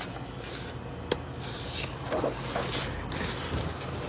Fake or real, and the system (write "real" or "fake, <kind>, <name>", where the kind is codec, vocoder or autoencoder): real